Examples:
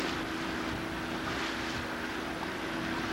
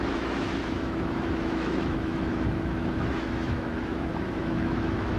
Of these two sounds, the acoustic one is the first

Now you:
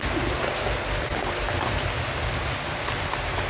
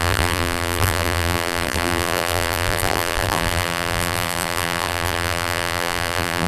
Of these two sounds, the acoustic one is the first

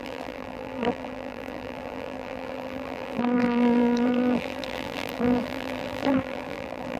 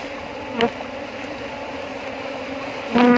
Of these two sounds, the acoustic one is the second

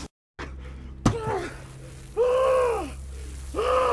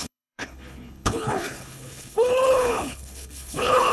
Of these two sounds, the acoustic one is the first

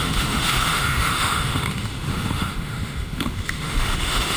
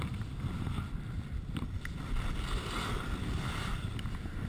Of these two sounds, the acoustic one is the second